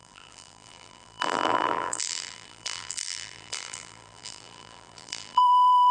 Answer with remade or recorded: remade